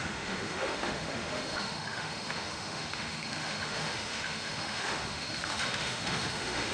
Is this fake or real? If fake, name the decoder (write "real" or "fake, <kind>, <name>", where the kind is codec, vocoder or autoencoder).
fake, autoencoder, DAC-VAE